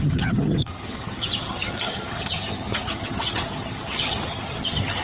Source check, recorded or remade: remade